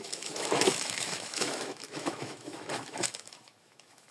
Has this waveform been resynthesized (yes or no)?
yes